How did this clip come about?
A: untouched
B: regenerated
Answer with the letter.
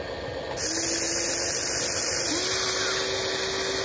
A